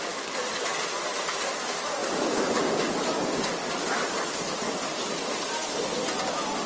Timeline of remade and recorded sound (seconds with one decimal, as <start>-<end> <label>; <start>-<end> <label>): 0.0-6.7 recorded